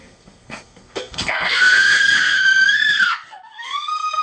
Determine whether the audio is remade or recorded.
remade